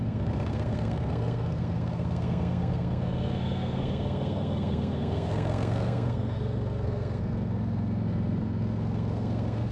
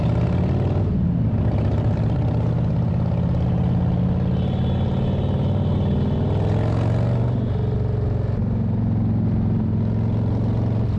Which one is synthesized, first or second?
first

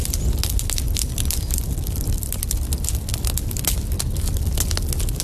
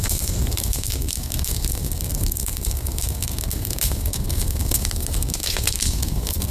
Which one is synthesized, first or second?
second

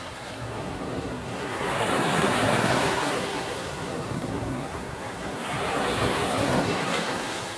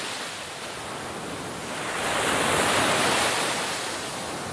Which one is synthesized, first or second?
first